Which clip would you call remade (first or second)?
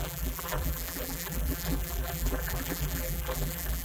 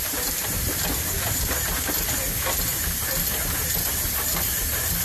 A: first